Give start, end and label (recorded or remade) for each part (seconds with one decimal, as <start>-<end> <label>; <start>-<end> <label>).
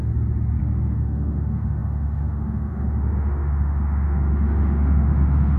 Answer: 0.0-0.6 recorded; 0.6-5.6 remade